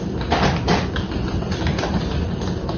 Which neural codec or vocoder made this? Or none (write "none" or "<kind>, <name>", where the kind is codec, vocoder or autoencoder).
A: none